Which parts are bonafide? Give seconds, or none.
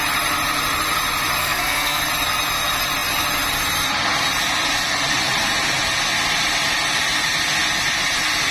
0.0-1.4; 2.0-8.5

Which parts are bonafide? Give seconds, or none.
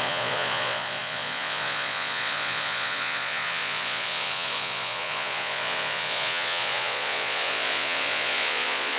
none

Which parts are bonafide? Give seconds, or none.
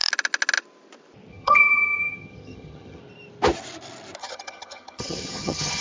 0.0-1.3; 3.0-4.2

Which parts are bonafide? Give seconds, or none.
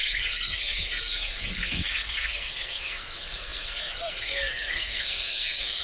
none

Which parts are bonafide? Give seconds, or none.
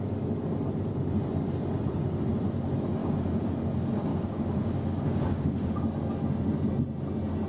0.0-3.0; 3.5-4.1; 5.7-7.5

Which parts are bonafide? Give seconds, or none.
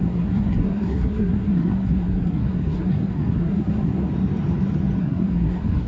4.1-5.0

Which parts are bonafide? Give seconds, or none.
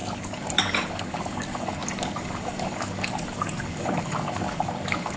none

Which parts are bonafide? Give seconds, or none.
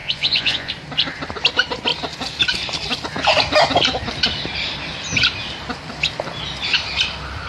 0.7-7.5